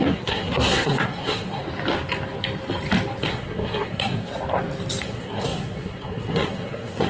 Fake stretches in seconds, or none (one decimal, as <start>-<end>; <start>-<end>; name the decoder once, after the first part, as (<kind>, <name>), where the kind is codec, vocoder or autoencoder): 0.0-1.6 (codec, SNAC); 3.3-4.3; 5.0-7.1